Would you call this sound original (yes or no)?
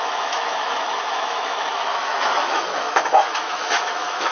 no